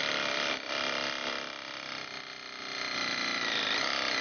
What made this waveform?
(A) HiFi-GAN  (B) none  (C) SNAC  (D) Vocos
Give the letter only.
B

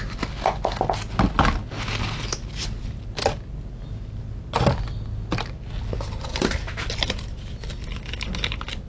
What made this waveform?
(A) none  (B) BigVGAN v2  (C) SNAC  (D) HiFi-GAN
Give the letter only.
A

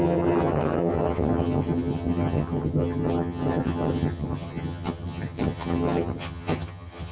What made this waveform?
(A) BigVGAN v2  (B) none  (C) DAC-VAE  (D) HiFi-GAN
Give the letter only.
D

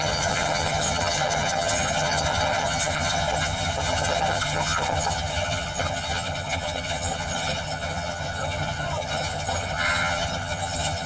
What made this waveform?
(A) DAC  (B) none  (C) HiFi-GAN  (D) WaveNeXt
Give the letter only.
C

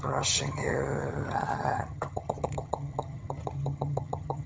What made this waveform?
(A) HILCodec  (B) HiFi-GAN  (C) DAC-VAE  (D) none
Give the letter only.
B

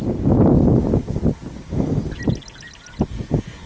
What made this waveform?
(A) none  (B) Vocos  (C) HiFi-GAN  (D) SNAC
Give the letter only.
A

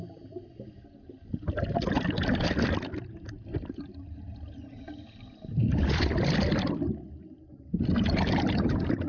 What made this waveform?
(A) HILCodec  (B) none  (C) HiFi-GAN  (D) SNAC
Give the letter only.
B